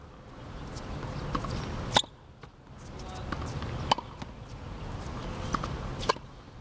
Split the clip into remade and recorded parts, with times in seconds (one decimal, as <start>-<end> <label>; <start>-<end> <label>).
0.0-6.6 recorded